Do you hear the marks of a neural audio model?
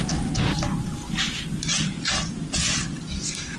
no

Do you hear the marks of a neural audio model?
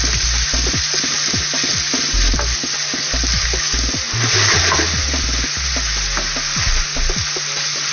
no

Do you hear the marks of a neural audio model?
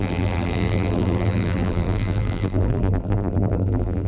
yes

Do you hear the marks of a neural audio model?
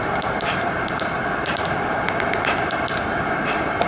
no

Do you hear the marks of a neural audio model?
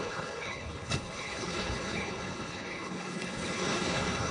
yes